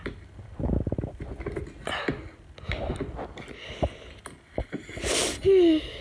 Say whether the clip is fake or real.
real